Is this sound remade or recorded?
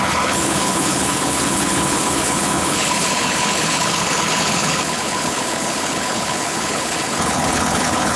remade